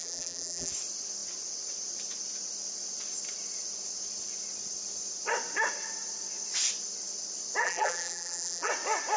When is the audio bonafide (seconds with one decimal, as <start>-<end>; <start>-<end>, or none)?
0.7-7.6; 8.7-9.2